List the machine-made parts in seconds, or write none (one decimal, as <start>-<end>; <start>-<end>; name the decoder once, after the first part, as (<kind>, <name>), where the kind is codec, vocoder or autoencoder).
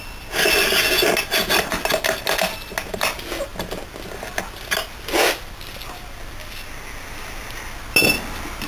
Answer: none